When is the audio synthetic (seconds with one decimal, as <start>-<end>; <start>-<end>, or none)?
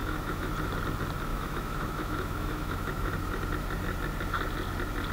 0.0-0.5; 1.3-3.1